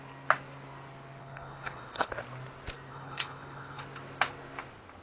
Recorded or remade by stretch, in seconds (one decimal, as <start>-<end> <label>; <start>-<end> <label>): 0.0-1.2 recorded; 1.2-2.1 remade; 2.1-2.9 recorded; 2.9-3.8 remade; 3.8-5.0 recorded